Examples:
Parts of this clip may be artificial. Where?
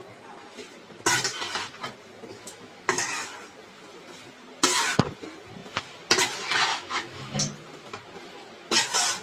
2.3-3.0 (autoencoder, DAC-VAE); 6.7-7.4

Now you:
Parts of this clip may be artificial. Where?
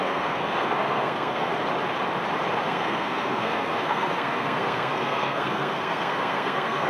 0.0-1.5 (codec, SNAC); 2.6-6.9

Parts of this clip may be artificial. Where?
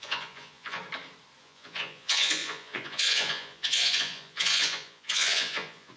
0.0-0.8 (vocoder, Vocos); 1.4-6.0